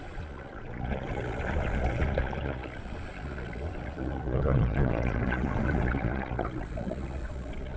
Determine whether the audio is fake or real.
fake